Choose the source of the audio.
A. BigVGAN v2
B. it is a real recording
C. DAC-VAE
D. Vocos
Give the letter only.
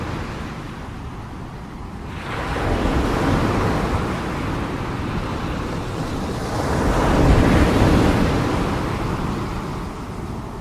B